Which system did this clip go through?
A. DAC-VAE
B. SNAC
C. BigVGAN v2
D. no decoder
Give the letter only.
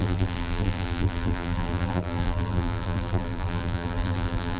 C